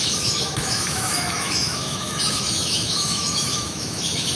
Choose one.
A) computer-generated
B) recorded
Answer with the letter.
A